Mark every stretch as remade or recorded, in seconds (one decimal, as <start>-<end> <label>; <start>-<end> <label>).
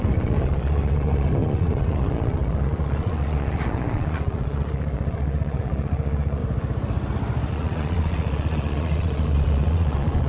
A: 0.0-6.4 remade; 6.4-7.5 recorded; 7.5-10.3 remade